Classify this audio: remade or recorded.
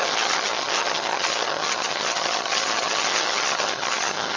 remade